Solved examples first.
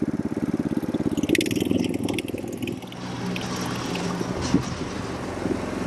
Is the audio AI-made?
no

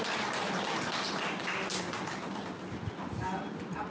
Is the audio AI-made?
no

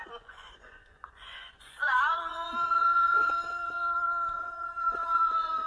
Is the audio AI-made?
yes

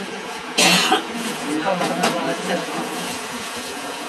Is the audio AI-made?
yes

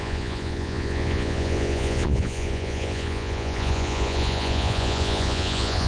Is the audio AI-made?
yes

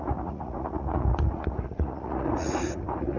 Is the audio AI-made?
yes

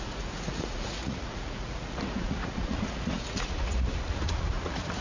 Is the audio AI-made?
yes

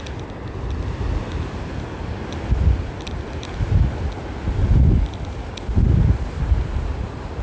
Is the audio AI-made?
no